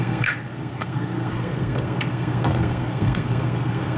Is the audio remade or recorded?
remade